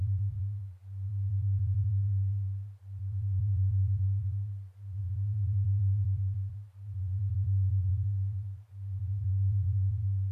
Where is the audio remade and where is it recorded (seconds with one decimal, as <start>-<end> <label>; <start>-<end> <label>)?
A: 0.0-10.3 remade